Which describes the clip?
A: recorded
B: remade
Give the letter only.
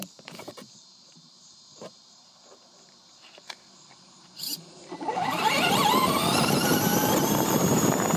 B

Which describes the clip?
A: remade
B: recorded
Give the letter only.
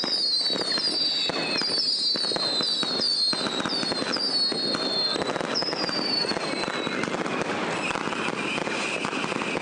B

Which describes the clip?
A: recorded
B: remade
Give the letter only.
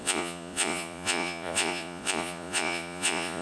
B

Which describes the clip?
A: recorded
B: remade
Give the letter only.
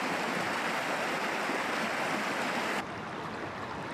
A